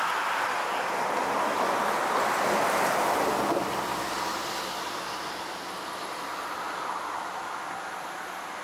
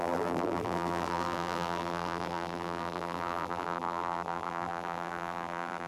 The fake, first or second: second